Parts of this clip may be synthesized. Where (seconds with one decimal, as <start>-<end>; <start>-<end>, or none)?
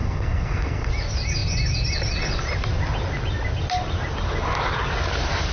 0.0-0.9